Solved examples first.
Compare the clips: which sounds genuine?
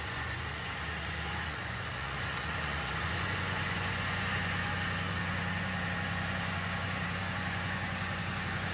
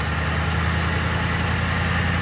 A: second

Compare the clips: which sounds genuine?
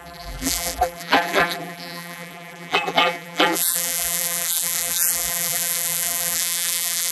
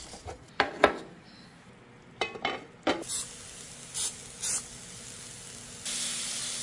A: second